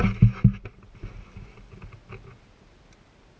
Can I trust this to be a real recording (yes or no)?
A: yes